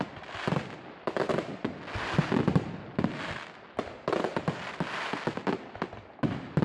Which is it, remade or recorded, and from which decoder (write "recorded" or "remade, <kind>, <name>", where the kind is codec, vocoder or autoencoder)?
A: recorded